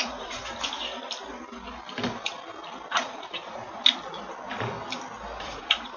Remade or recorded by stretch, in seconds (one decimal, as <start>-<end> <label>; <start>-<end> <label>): 0.0-0.4 remade; 0.4-2.9 recorded; 2.9-3.8 remade; 3.8-5.4 recorded; 5.4-6.0 remade